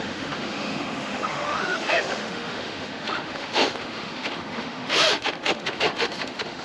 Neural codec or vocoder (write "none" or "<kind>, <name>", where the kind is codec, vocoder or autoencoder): autoencoder, DAC-VAE